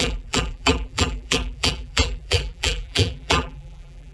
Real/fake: fake